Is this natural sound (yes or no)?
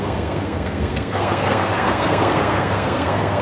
no